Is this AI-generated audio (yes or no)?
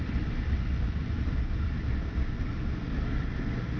no